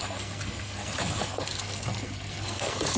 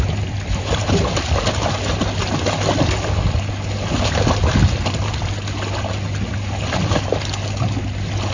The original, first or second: second